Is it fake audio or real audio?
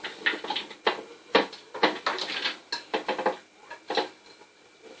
real